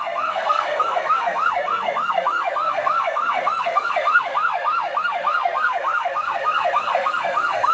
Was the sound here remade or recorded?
remade